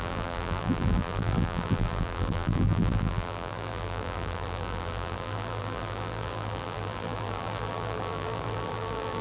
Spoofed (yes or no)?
yes